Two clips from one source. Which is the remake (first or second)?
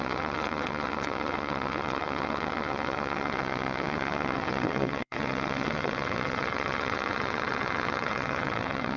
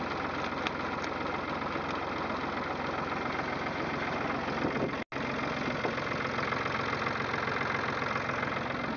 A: first